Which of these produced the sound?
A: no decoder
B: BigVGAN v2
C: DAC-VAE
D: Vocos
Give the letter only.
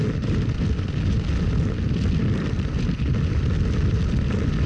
A